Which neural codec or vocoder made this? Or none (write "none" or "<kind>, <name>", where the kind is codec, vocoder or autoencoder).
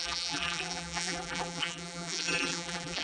vocoder, BigVGAN v2